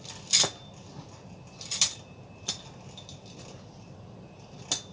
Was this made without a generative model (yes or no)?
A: yes